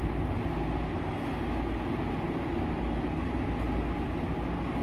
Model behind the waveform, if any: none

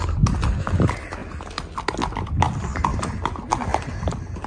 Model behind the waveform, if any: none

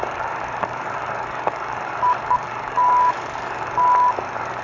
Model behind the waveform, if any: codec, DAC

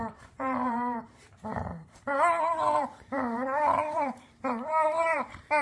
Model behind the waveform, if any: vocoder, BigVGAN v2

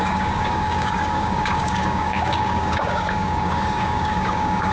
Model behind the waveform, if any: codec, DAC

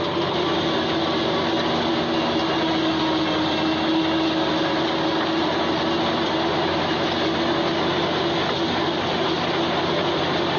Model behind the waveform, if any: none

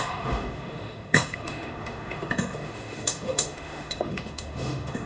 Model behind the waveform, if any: autoencoder, DAC-VAE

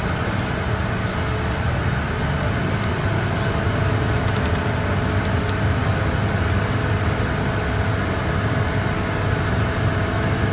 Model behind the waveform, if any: none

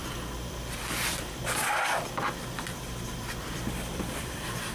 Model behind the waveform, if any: vocoder, BigVGAN v2